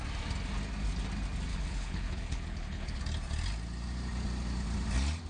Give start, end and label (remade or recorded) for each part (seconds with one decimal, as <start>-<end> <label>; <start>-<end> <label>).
0.0-1.5 recorded; 1.5-3.0 remade; 3.0-5.3 recorded